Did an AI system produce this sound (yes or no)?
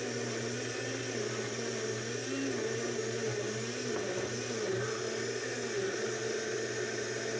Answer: no